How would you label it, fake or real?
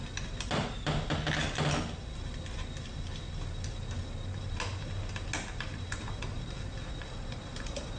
real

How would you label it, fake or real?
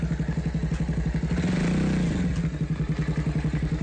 real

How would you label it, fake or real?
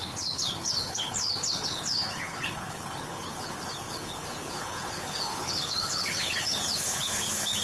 fake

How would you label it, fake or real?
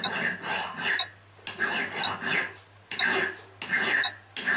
real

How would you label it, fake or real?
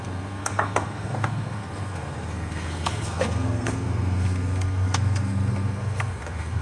fake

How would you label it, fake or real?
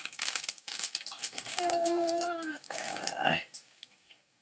fake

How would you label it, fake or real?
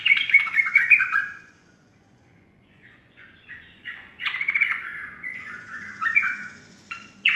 fake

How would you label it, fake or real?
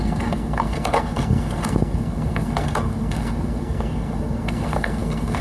fake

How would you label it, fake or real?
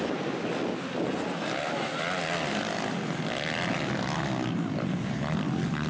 real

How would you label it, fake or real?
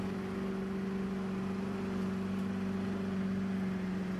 real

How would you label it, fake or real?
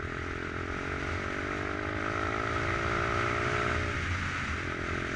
real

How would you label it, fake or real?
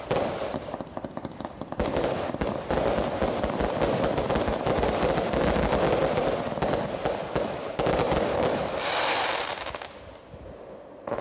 real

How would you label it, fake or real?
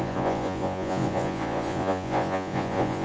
fake